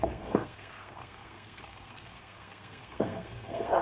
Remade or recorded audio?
remade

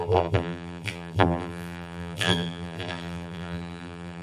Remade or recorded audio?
remade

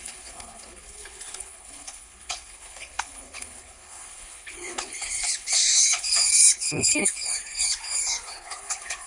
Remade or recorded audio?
remade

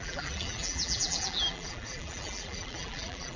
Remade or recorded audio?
remade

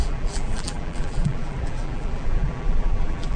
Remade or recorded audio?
remade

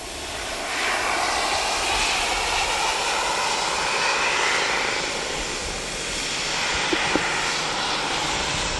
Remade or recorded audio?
recorded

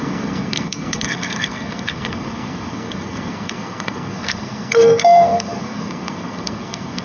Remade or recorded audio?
remade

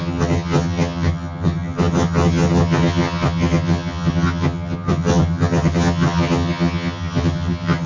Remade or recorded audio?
remade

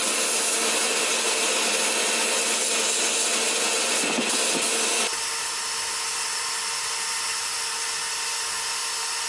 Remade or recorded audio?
recorded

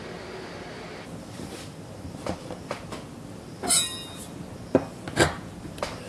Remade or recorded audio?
recorded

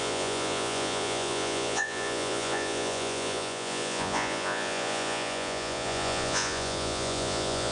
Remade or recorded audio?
remade